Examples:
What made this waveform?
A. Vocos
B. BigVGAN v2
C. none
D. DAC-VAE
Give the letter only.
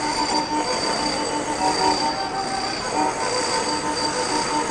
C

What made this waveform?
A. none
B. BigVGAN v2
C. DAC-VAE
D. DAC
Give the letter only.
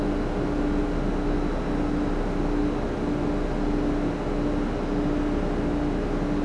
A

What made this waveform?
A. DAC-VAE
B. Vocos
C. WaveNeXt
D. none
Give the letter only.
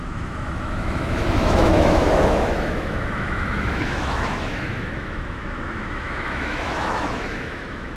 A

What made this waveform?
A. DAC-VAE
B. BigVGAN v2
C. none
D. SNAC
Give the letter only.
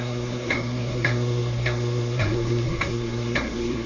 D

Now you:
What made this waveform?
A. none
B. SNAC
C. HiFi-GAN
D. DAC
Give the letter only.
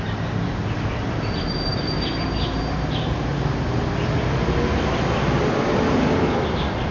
A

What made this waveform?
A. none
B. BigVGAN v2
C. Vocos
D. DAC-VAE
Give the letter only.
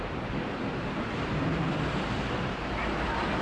B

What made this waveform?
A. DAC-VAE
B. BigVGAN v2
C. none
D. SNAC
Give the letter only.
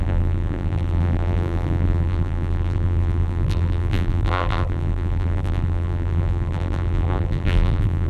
B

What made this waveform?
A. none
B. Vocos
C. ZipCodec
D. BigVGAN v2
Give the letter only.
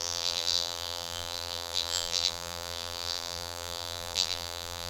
D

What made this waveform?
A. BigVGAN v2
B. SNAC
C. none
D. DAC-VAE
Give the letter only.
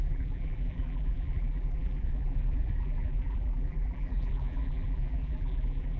A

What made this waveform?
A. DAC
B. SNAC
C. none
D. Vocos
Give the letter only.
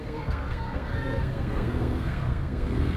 B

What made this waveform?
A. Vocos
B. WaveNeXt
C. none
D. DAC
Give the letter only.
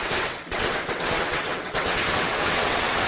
B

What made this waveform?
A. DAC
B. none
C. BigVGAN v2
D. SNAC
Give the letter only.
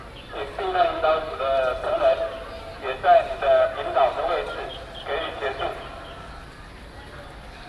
B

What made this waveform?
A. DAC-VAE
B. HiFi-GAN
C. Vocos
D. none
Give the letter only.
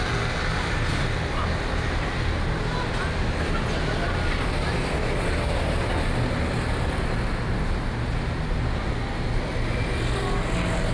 D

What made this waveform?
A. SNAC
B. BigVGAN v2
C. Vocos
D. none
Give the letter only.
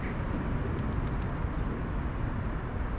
D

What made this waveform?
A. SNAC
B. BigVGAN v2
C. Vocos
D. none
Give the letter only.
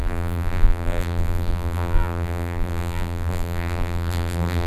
B